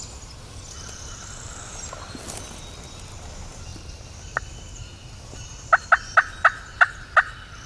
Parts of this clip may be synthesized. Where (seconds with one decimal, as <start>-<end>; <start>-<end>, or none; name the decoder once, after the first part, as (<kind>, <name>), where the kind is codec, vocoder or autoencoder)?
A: none